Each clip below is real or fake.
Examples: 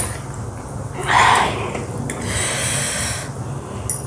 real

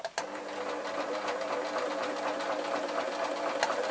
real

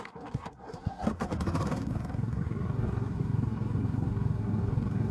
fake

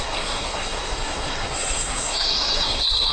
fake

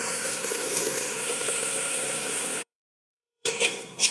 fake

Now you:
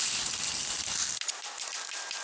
real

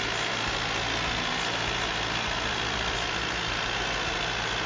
real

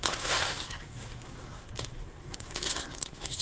fake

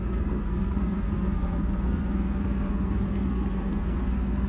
fake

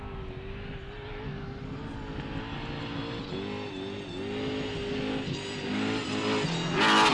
real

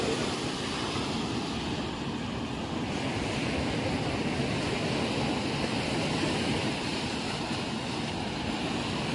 real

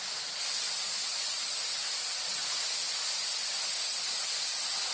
real